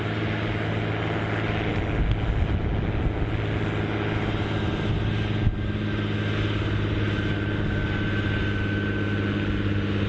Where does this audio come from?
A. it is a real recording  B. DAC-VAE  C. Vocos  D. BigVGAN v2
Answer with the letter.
A